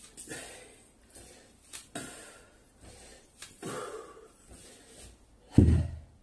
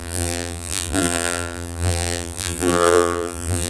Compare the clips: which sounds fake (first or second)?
second